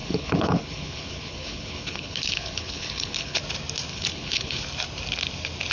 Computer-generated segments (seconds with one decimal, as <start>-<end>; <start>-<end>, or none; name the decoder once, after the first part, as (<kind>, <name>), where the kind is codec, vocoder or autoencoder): 0.0-3.4 (codec, HILCodec); 3.9-4.6